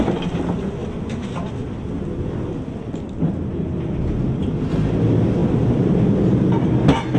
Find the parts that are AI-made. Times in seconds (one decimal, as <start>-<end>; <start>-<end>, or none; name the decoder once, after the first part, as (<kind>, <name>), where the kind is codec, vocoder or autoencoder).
none